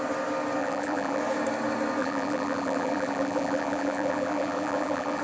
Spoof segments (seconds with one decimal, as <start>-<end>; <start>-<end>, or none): 0.6-1.2; 2.0-5.2

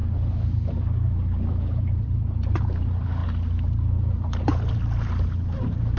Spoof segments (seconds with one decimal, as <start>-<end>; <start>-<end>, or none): 1.5-3.2

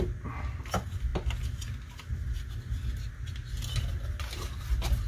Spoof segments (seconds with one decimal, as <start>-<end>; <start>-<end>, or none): none